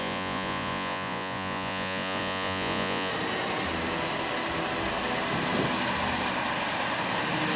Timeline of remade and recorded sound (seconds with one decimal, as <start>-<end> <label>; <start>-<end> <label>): 0.0-3.1 remade; 3.1-7.6 recorded